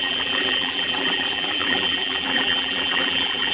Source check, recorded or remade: remade